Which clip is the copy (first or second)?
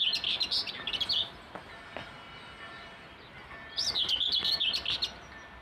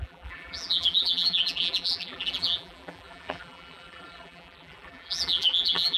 second